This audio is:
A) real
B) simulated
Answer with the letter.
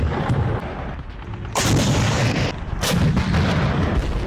A